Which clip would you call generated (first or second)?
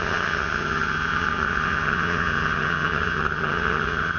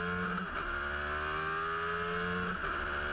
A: first